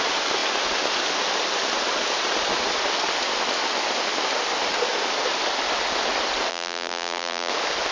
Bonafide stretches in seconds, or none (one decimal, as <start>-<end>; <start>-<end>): 0.0-6.5; 7.5-7.9

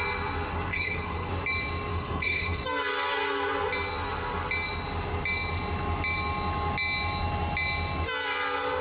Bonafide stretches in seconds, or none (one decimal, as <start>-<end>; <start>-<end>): 0.0-0.7; 1.3-1.9; 2.6-8.8

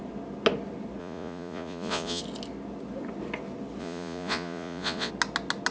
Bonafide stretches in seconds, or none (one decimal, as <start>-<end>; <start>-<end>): 0.0-1.0; 2.2-3.8; 5.1-5.7

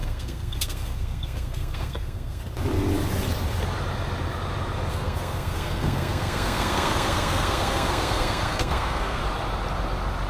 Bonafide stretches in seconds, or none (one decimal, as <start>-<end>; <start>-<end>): 2.4-4.9; 9.2-10.3

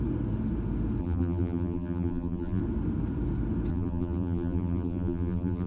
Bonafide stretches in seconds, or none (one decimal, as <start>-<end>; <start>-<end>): 0.0-1.0; 2.6-3.7

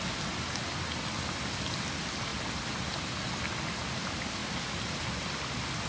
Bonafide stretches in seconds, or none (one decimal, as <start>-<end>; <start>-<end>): 0.0-5.9